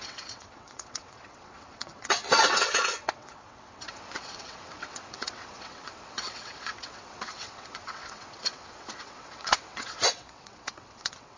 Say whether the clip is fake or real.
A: fake